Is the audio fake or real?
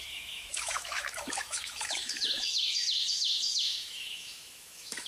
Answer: fake